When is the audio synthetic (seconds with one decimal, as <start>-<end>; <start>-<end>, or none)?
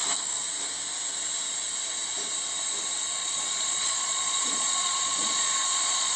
3.2-6.2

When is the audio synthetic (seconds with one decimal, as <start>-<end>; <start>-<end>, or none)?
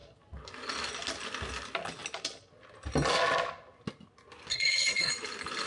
4.5-5.1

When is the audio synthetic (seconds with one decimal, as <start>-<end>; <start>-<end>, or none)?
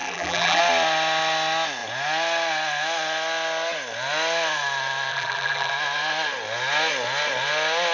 0.0-0.6; 5.1-5.7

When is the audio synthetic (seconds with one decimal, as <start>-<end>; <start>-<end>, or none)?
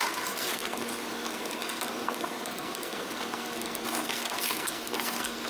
0.0-5.5